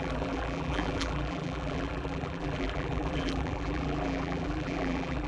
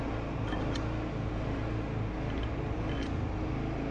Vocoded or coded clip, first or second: first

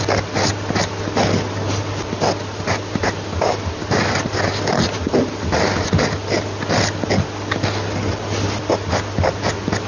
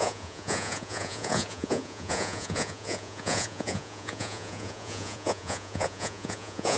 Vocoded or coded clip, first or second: second